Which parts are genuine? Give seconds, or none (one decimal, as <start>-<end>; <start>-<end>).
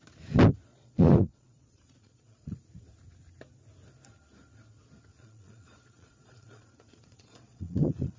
0.0-0.7; 2.6-5.1